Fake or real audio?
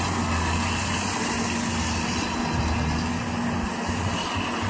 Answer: real